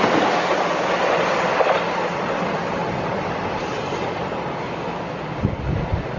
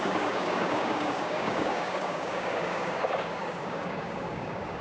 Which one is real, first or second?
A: first